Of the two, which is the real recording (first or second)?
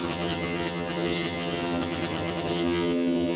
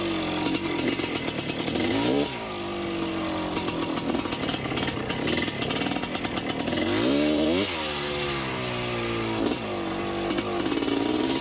second